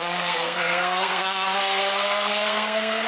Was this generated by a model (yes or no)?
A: yes